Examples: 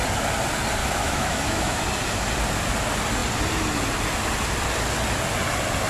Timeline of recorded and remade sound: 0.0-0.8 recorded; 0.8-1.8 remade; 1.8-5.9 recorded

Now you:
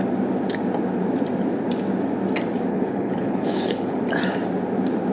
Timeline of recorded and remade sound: 0.0-2.7 recorded; 2.7-4.0 remade; 4.0-5.1 recorded